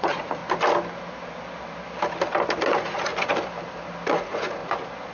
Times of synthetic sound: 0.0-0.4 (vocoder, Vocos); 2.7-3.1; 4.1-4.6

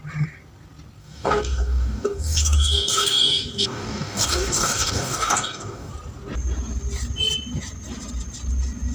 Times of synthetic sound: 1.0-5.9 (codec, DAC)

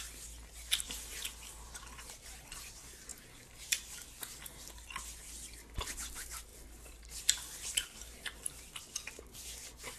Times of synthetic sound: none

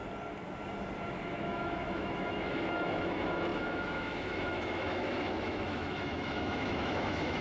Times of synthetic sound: 1.1-7.4 (autoencoder, DAC-VAE)